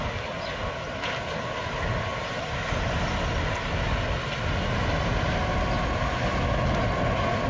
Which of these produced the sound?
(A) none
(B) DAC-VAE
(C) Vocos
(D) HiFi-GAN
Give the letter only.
A